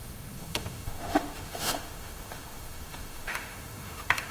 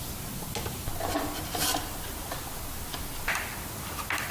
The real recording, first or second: second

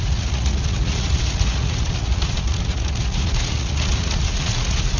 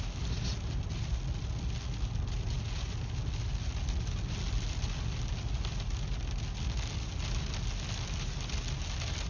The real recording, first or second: second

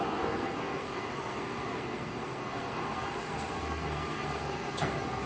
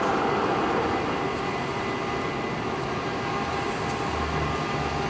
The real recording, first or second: second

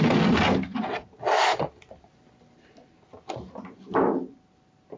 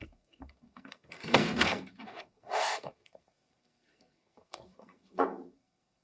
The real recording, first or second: first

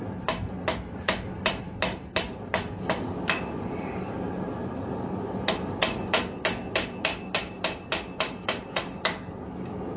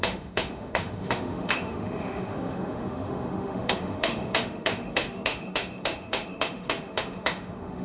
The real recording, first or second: first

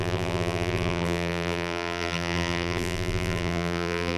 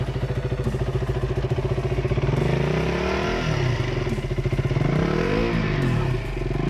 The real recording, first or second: second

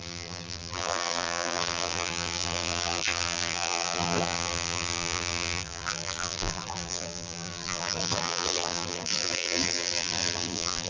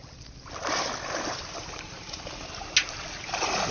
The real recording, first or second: second